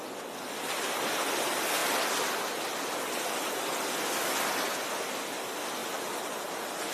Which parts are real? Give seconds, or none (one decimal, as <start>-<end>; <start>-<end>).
0.0-1.8; 4.5-5.8; 6.5-6.9